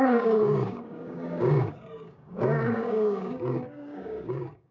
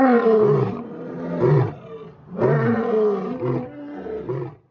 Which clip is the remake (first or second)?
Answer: first